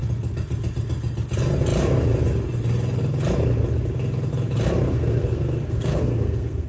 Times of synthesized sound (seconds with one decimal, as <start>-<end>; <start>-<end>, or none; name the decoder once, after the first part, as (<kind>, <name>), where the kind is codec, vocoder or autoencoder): 4.9-6.7 (codec, SNAC)